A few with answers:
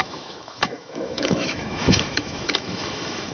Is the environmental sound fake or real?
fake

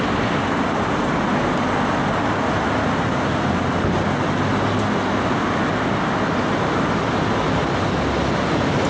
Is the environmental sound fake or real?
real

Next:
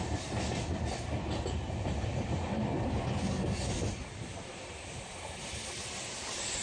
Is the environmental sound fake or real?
real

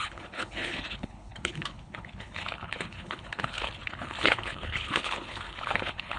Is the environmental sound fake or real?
fake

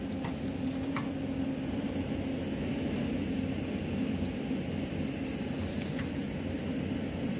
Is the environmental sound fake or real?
real